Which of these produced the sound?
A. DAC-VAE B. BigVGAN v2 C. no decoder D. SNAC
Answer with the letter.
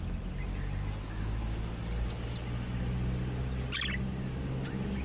C